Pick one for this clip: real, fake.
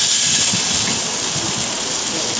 real